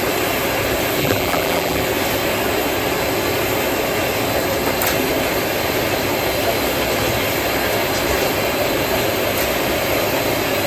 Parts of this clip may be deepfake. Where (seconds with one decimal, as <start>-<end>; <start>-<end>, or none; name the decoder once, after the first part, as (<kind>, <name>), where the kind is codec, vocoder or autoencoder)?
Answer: 1.0-1.8 (vocoder, BigVGAN v2)